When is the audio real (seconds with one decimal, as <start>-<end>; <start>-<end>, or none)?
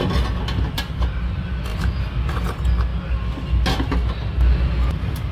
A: 0.0-5.3